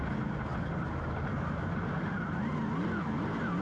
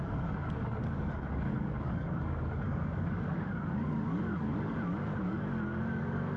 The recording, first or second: first